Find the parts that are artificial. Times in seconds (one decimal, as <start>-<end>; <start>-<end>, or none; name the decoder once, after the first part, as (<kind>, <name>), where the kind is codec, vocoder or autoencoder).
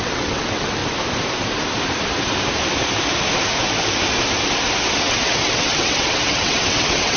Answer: 0.0-0.8 (vocoder, WaveNeXt); 5.0-7.2